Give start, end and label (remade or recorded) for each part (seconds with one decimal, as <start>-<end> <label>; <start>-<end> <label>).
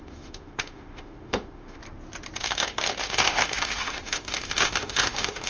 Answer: 0.0-1.8 remade; 1.8-2.4 recorded; 2.4-5.5 remade